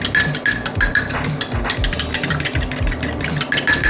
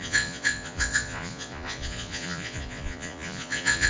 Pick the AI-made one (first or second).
second